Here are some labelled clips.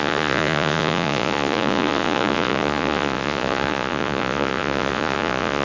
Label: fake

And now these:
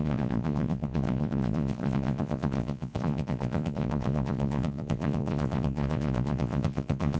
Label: fake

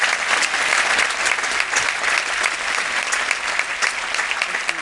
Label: real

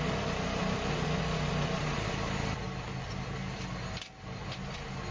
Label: real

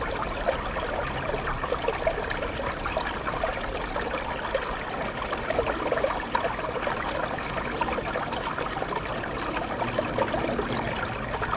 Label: real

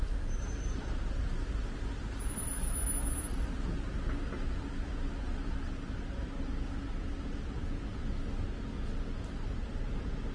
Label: real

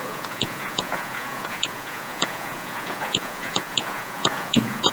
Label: fake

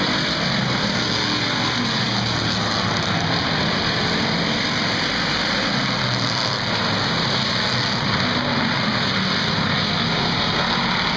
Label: real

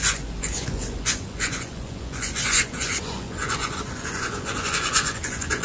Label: fake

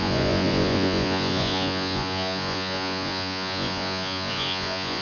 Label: fake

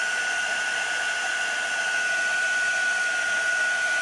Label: real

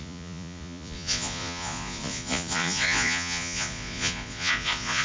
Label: fake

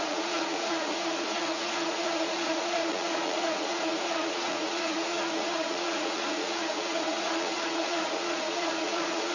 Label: fake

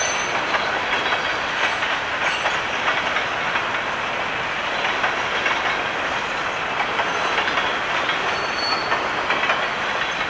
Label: real